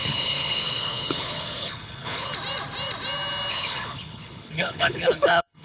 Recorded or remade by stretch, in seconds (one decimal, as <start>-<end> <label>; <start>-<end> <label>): 0.0-2.3 remade; 2.3-3.5 recorded; 3.5-5.6 remade